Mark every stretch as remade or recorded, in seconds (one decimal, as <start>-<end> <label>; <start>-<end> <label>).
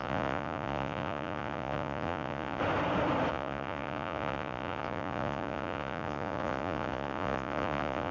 0.0-2.6 remade; 2.6-3.3 recorded; 3.3-8.1 remade